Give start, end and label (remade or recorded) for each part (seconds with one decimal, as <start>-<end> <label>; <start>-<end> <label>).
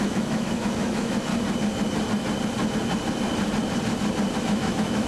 0.0-1.3 remade; 1.3-4.4 recorded; 4.4-5.1 remade